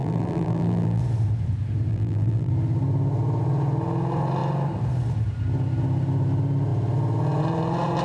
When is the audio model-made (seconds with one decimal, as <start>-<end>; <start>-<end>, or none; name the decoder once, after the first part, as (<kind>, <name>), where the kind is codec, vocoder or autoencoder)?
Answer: 0.0-1.0 (vocoder, BigVGAN v2); 1.9-2.5